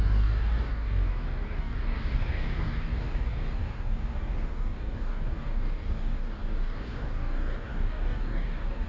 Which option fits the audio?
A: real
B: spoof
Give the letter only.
B